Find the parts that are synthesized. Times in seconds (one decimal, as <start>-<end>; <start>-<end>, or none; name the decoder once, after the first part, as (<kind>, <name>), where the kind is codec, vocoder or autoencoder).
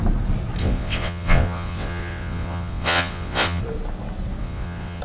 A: 0.6-3.6 (vocoder, WaveNeXt); 4.4-5.0